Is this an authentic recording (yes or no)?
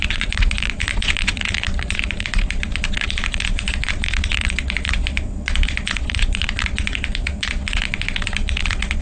no